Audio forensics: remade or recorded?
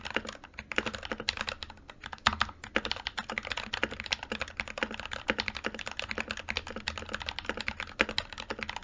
recorded